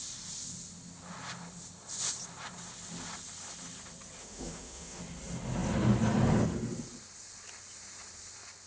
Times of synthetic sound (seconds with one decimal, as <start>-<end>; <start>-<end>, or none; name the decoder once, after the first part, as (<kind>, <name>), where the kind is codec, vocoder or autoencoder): 4.2-5.0 (autoencoder, DAC-VAE)